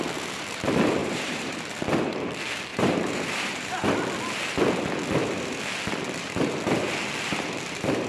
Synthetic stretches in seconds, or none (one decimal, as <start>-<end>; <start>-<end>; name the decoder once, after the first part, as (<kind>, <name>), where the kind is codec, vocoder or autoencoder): 1.0-1.6 (vocoder, BigVGAN v2); 2.7-3.9